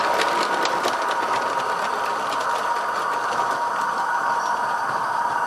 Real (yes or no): yes